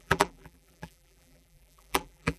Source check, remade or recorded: remade